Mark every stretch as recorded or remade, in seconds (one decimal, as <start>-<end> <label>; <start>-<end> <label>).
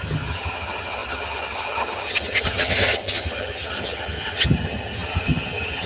0.0-5.9 remade